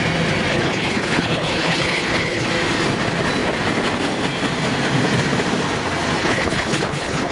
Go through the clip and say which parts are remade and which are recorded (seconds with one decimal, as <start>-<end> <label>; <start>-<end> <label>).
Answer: 0.0-0.5 recorded; 0.5-2.5 remade; 2.5-6.2 recorded; 6.2-7.3 remade